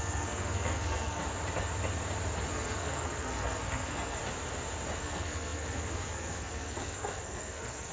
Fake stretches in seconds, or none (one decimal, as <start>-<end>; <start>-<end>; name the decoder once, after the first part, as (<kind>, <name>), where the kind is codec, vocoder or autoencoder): 0.0-1.2 (codec, SNAC); 2.5-4.2; 5.0-7.9

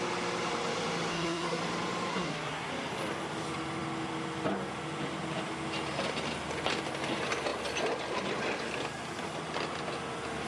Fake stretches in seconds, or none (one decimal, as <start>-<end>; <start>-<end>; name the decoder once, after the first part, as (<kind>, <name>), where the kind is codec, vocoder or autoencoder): 1.1-1.6 (codec, SNAC); 2.1-2.7

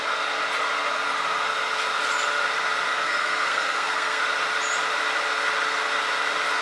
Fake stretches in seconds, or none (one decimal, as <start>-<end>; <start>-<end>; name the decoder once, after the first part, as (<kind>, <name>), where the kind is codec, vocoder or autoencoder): 2.9-4.2 (codec, SNAC)

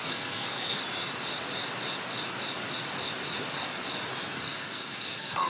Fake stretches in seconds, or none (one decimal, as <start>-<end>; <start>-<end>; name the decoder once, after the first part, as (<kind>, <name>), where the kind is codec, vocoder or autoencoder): 0.0-0.8 (codec, SNAC); 4.1-5.5

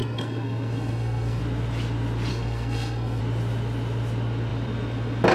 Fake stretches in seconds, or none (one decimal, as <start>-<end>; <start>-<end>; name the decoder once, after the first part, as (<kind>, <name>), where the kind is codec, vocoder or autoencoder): 0.0-1.4 (codec, SNAC); 2.3-3.2